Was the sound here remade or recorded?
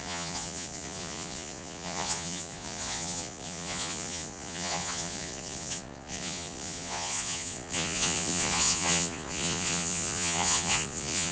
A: remade